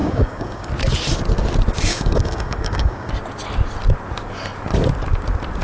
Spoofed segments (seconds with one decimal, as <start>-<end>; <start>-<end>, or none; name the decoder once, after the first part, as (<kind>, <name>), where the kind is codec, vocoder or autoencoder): 0.0-0.7 (codec, DAC); 1.9-3.1